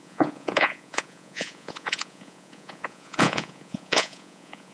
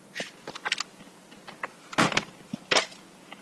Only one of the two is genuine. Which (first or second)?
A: second